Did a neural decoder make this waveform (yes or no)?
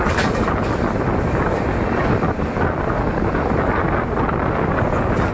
no